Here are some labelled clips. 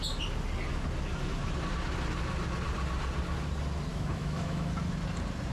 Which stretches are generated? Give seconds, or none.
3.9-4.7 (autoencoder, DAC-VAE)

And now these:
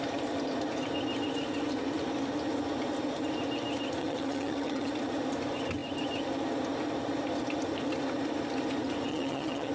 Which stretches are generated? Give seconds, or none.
4.0-4.9 (vocoder, HiFi-GAN); 9.1-9.7

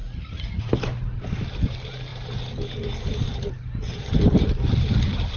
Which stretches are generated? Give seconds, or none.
0.0-0.7 (vocoder, Vocos)

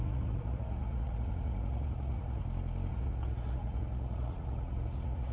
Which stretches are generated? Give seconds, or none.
0.0-2.4 (vocoder, Vocos); 2.9-5.3

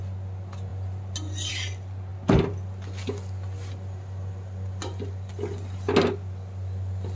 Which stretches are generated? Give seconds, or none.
none